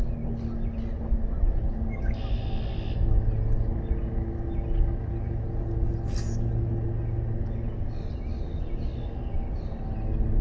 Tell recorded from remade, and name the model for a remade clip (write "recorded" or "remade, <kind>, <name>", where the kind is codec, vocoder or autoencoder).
recorded